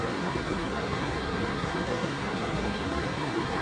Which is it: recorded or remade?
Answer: remade